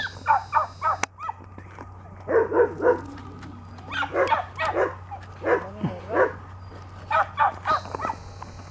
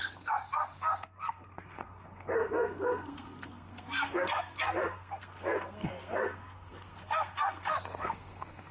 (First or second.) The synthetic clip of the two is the second